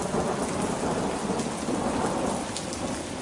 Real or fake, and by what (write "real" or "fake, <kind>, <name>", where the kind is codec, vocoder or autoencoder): real